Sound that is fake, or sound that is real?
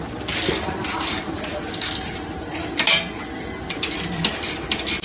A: real